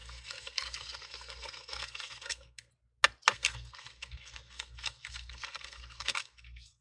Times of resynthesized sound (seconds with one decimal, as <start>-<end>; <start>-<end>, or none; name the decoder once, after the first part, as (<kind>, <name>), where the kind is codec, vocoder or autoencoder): 0.0-2.7 (codec, SNAC); 3.3-6.8